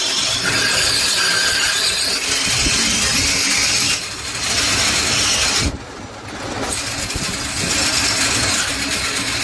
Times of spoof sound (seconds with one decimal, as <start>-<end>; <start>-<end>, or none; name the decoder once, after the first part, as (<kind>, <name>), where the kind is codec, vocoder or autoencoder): none